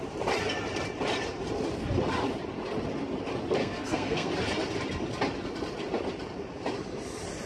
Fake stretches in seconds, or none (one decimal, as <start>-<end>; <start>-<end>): 3.6-4.3